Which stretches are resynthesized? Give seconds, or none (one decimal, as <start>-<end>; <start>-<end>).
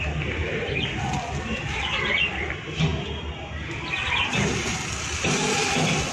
none